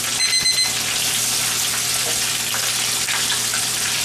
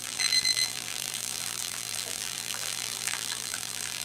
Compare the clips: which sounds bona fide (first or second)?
first